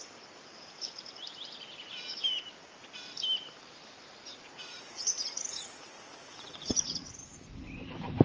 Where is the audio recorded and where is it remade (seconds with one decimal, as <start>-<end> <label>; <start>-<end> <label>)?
0.0-4.3 recorded; 4.3-7.4 remade; 7.4-8.2 recorded